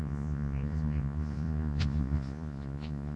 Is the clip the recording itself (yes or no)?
no